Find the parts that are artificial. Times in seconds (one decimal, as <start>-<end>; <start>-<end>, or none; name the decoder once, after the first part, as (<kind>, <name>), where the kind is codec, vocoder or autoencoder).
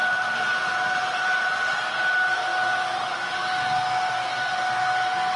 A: 0.0-2.5 (vocoder, BigVGAN v2)